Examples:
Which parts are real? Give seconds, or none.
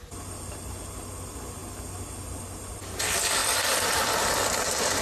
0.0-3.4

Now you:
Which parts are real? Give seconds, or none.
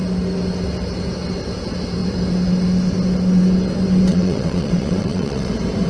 0.0-4.1; 5.5-5.9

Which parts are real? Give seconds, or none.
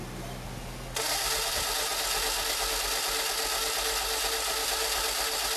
0.0-5.6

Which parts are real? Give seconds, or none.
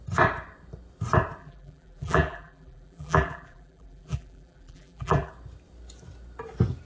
0.0-1.4; 5.3-6.8